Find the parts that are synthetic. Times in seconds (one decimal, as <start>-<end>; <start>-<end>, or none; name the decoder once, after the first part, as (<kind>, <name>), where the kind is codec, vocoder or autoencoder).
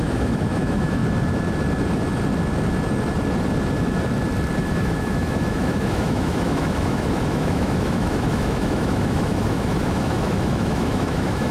0.0-1.0 (autoencoder, DAC-VAE); 4.6-11.5